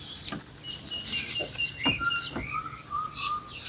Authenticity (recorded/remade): recorded